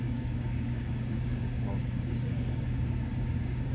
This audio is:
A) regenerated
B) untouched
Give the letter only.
A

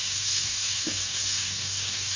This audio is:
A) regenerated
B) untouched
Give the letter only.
A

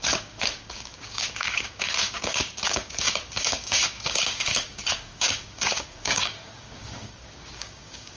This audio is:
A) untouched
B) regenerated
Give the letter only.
B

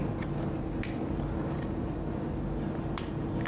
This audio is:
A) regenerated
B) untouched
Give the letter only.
B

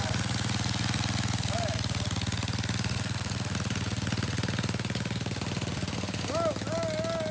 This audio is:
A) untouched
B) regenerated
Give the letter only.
A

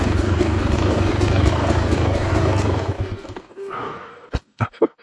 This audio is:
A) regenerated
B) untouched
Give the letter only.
A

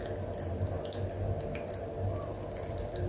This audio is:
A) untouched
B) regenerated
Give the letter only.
A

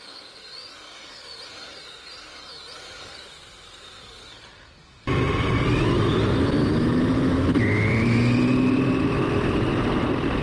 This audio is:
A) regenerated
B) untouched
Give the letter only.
B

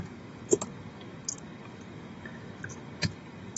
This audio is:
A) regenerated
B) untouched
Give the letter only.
A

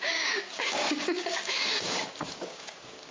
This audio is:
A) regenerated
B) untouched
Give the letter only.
A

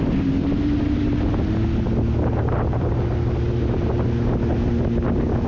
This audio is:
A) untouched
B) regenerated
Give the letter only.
A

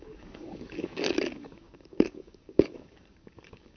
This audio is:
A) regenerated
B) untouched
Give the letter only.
A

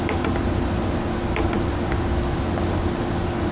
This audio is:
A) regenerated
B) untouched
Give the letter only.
B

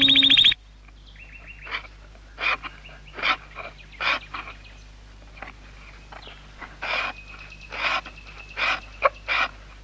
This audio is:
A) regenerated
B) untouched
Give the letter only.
B